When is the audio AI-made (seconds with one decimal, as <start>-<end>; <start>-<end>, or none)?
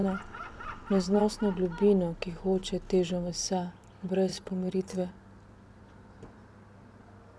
0.0-1.2; 4.3-5.1